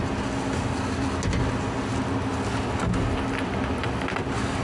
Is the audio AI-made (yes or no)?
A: no